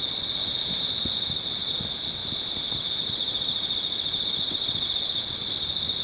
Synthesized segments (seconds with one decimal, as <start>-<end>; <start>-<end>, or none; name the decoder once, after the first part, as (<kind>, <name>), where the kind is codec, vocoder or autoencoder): none